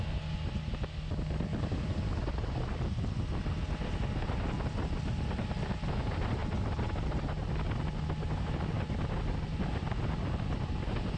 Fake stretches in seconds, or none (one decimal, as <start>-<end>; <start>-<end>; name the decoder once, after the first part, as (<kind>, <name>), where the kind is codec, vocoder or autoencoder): none